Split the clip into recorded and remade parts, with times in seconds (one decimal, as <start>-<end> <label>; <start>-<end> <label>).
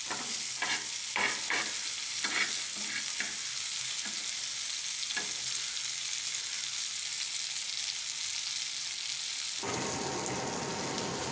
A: 0.0-11.3 recorded